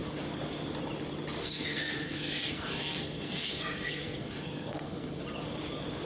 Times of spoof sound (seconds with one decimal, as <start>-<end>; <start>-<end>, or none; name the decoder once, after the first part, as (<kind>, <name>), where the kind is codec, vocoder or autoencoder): 1.4-5.1 (codec, SNAC)